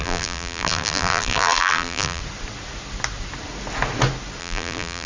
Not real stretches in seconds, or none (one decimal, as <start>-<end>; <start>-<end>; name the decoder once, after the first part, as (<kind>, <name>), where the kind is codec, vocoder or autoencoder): 0.0-2.2 (vocoder, BigVGAN v2); 4.4-5.1